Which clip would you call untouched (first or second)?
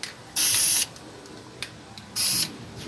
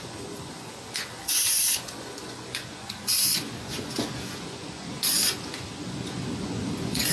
first